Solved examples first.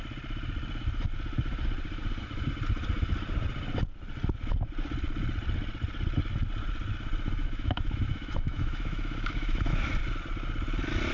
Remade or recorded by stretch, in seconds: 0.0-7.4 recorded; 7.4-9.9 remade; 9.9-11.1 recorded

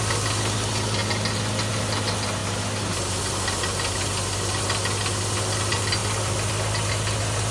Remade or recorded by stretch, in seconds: 0.0-7.5 recorded

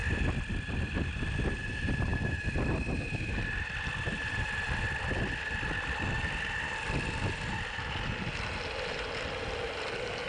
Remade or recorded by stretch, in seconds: 0.0-10.3 recorded

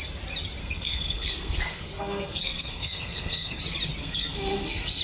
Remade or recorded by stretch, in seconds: 0.0-0.6 recorded; 0.6-3.6 remade; 3.6-4.0 recorded; 4.0-5.0 remade

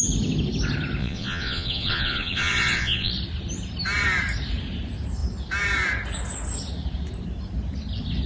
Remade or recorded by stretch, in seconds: 0.0-1.0 recorded; 1.0-3.1 remade; 3.1-8.3 recorded

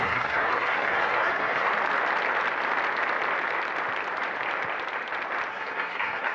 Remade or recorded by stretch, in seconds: 0.0-1.7 remade; 1.7-5.5 recorded; 5.5-6.3 remade

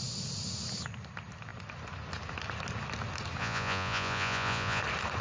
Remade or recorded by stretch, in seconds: 0.0-3.4 recorded; 3.4-4.8 remade; 4.8-5.2 recorded

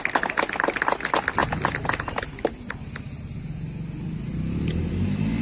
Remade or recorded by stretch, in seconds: 0.0-5.4 recorded